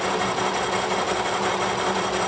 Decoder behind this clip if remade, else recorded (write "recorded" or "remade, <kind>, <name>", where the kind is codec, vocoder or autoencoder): recorded